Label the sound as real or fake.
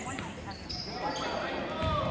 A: real